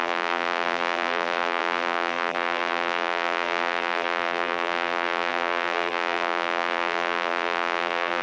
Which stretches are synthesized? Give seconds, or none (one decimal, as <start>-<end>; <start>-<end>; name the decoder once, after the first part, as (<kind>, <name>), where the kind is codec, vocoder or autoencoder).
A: 0.0-8.2 (vocoder, BigVGAN v2)